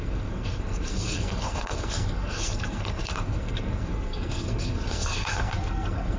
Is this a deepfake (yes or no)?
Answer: yes